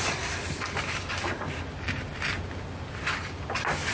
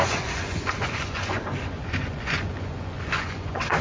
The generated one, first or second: second